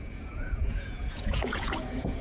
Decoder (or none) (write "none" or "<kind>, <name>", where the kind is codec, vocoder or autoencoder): vocoder, Vocos